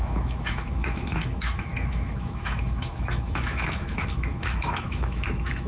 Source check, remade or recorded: remade